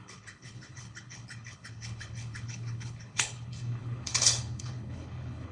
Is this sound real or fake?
fake